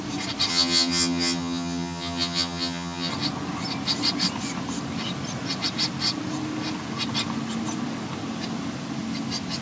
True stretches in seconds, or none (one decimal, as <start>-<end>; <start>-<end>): 0.0-0.5; 3.1-9.6